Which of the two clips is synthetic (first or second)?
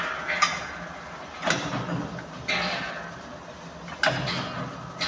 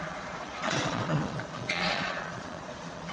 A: second